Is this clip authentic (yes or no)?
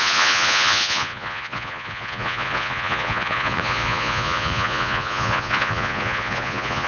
no